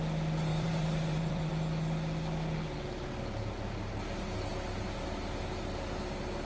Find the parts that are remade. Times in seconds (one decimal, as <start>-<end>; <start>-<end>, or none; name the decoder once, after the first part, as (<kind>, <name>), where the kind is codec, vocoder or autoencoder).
0.5-1.5 (vocoder, BigVGAN v2)

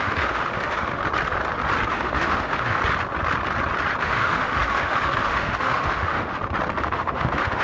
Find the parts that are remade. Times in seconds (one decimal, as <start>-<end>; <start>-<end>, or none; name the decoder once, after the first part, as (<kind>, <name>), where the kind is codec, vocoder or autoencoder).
0.0-1.0 (autoencoder, DAC-VAE); 1.9-2.8; 4.0-6.3; 6.8-7.6

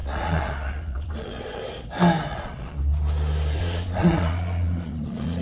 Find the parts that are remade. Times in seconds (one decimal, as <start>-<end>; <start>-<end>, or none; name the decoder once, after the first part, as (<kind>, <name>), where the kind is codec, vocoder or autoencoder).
0.0-1.6 (vocoder, Vocos); 2.3-2.8; 3.6-5.4